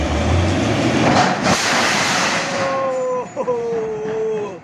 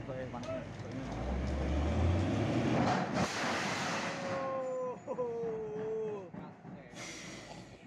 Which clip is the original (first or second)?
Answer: second